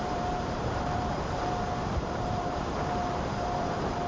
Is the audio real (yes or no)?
no